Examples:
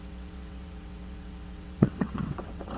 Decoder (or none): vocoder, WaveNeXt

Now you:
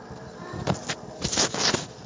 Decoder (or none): none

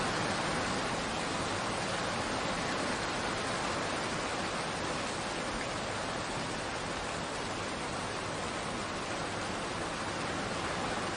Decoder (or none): none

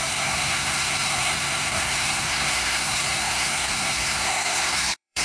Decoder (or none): codec, SNAC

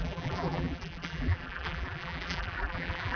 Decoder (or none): vocoder, BigVGAN v2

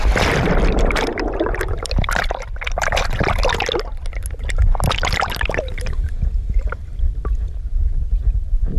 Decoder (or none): none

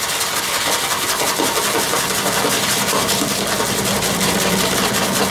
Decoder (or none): none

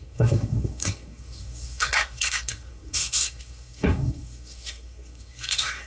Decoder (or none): codec, SNAC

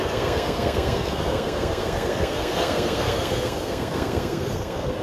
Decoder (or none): codec, SNAC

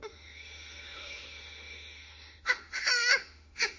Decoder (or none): autoencoder, DAC-VAE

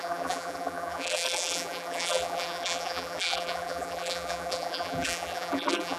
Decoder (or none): vocoder, BigVGAN v2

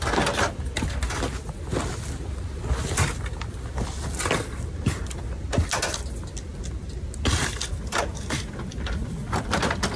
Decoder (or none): none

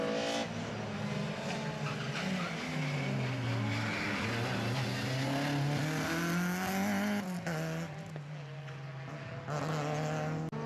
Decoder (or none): none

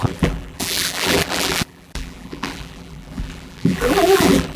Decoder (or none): vocoder, BigVGAN v2